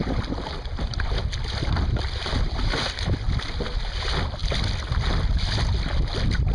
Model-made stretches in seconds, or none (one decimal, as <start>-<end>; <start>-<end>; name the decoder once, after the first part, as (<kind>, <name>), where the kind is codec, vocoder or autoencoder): none